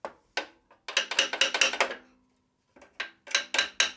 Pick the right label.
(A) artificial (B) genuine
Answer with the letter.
B